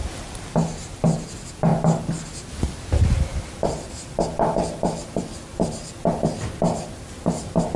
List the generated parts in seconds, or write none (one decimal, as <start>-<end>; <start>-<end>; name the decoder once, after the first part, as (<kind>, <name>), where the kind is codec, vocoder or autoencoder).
3.3-7.8 (vocoder, BigVGAN v2)